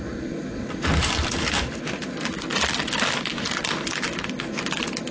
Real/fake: real